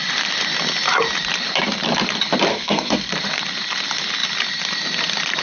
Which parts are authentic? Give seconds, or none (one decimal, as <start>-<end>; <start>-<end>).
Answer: 0.0-2.5; 3.1-5.4